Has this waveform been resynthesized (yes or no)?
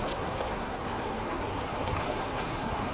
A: yes